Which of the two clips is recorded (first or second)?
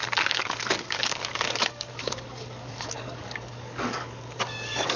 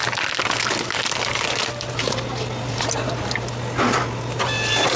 second